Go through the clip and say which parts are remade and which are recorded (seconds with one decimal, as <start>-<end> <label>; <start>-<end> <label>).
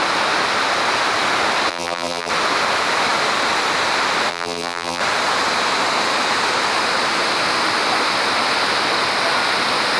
0.0-1.7 recorded; 1.7-2.3 remade; 2.3-4.3 recorded; 4.3-5.0 remade; 5.0-10.0 recorded